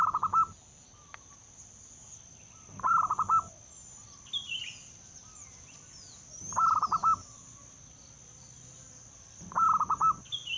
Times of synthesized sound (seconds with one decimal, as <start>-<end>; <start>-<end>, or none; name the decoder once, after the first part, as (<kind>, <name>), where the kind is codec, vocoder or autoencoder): none